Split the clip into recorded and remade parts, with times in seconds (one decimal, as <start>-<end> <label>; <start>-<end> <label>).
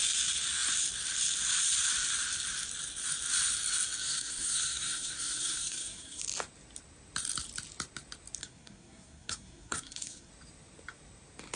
0.0-4.0 recorded; 4.0-6.2 remade; 6.2-8.4 recorded; 8.4-10.3 remade; 10.3-11.6 recorded